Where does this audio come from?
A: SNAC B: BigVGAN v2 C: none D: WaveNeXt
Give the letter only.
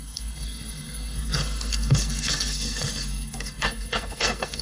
A